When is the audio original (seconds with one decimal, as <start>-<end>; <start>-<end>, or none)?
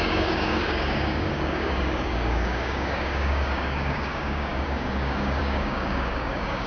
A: none